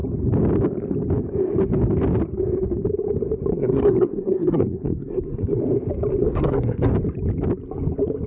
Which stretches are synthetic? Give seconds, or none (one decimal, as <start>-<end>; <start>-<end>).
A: 3.5-5.6; 6.2-6.9